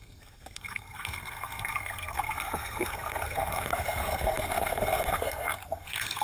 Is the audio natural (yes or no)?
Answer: no